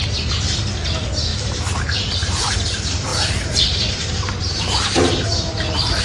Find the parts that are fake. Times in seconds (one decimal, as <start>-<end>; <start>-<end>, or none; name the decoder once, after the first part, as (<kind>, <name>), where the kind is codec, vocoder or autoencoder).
1.3-2.5 (vocoder, BigVGAN v2); 3.1-6.0